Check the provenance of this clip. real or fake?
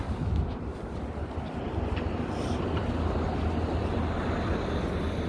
real